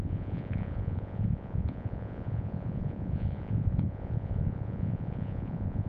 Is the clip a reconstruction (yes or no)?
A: yes